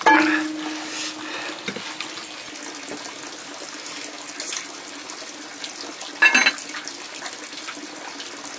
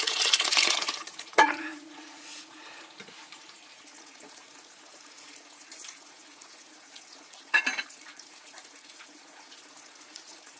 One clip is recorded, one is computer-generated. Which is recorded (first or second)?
first